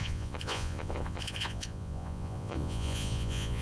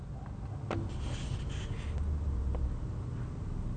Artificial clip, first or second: first